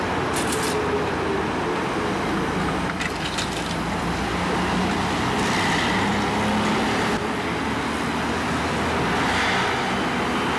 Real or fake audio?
real